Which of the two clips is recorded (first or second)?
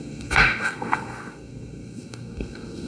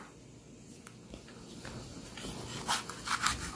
second